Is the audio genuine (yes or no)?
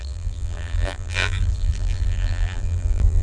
no